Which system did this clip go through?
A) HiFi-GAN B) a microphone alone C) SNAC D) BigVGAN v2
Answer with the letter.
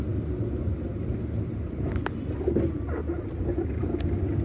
B